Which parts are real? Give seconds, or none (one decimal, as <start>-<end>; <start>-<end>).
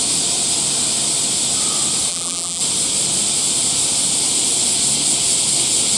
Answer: 0.0-2.1; 2.6-6.0